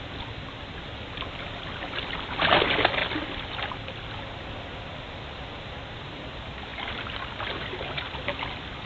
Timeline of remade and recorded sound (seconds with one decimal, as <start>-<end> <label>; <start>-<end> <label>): 0.0-8.9 recorded